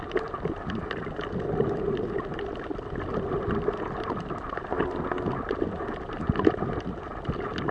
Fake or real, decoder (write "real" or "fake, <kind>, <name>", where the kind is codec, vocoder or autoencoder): real